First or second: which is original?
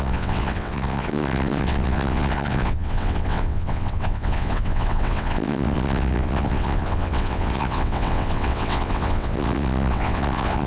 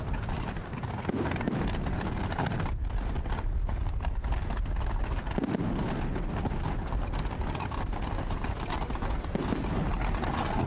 second